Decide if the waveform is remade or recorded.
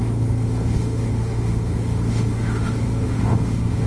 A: remade